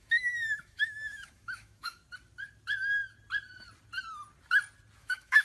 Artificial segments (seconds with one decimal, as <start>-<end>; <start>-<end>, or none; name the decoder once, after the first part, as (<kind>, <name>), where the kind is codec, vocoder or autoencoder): 0.0-2.0 (autoencoder, DAC-VAE); 5.0-5.4